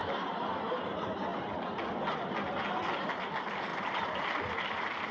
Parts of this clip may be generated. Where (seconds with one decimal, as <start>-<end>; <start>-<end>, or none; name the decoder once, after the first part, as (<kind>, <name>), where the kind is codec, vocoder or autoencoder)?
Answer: none

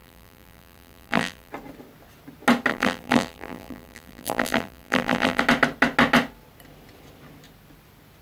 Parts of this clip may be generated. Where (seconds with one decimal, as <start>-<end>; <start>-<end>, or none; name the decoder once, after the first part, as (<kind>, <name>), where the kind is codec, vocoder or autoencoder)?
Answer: 0.0-1.5 (vocoder, BigVGAN v2); 2.7-5.4